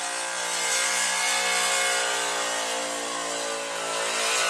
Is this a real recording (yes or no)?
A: yes